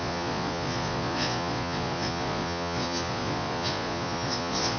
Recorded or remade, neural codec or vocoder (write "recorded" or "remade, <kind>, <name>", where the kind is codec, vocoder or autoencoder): remade, vocoder, Vocos